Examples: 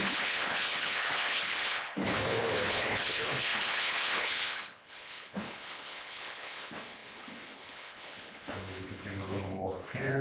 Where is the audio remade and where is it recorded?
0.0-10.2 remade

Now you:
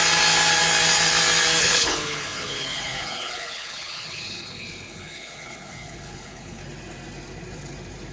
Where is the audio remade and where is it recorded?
0.0-1.6 recorded; 1.6-6.6 remade; 6.6-8.1 recorded

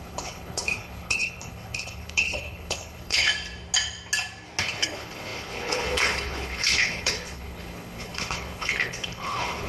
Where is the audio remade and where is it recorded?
0.0-3.3 remade; 3.3-4.6 recorded; 4.6-9.7 remade

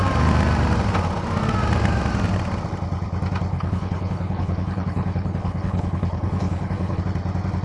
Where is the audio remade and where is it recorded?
0.0-3.5 recorded; 3.5-7.0 remade; 7.0-7.6 recorded

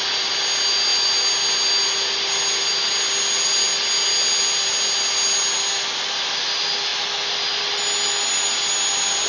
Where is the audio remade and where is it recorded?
0.0-9.3 recorded

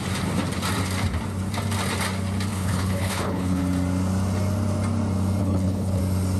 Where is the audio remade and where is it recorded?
0.0-2.5 recorded; 2.5-3.6 remade; 3.6-5.4 recorded; 5.4-6.0 remade; 6.0-6.4 recorded